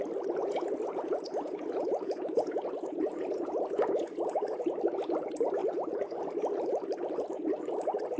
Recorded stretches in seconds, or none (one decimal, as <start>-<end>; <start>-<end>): 0.0-0.4; 4.8-5.6; 6.2-8.2